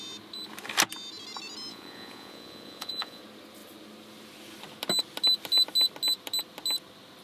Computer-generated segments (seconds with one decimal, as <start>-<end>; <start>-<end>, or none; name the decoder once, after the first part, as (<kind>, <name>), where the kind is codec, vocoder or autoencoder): 1.7-3.2 (vocoder, Vocos)